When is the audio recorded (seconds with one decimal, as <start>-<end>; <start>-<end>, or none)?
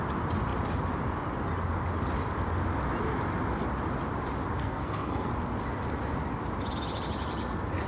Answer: 0.0-4.6; 5.3-7.9